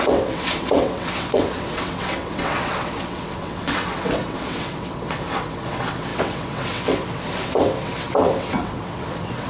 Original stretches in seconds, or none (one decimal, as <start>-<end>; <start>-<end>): none